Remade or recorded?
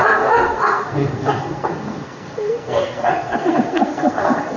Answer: remade